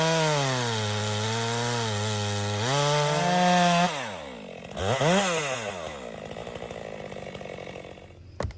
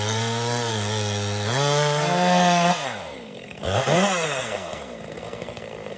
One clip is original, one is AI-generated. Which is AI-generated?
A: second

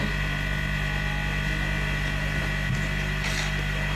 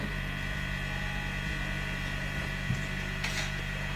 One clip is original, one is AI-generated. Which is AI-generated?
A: second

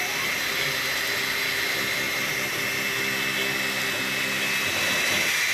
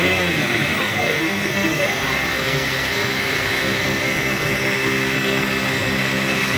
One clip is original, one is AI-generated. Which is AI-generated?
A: second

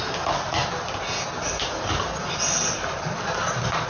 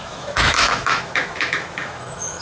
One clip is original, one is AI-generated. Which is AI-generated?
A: second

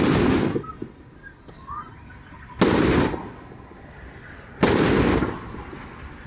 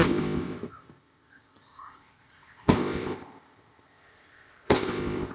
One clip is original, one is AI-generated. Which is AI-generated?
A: second